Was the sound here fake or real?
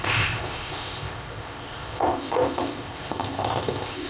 fake